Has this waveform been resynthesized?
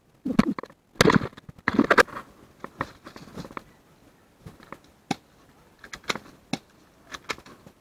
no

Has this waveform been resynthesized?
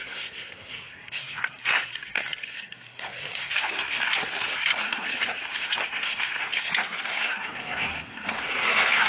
yes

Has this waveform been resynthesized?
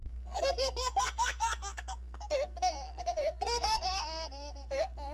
yes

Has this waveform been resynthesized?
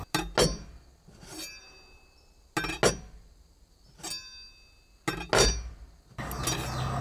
no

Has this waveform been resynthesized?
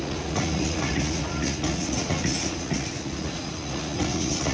yes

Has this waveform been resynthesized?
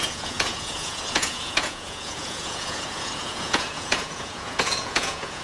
yes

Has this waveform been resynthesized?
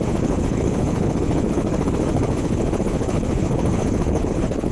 yes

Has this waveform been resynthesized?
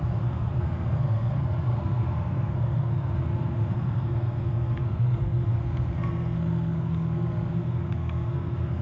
yes